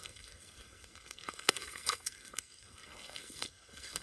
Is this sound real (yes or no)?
no